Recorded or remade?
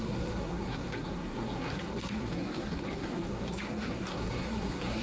remade